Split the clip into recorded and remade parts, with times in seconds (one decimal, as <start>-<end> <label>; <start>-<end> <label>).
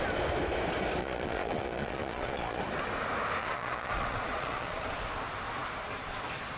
0.0-1.0 recorded; 1.0-2.6 remade; 2.6-3.4 recorded; 3.4-5.0 remade; 5.0-6.6 recorded